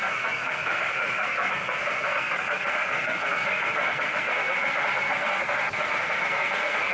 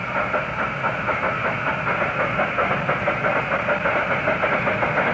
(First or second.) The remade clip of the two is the first